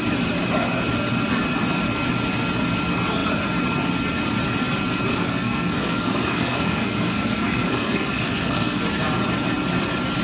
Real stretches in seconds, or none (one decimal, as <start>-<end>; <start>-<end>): 0.0-5.1; 8.8-10.2